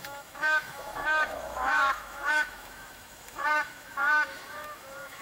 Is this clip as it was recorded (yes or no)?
no